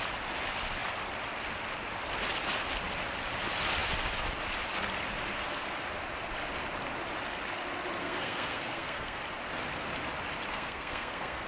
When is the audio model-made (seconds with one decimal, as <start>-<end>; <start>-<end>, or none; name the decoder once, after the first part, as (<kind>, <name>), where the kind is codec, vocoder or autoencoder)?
8.0-9.2 (codec, SNAC); 10.5-11.5